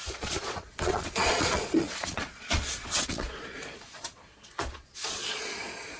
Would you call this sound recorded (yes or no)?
no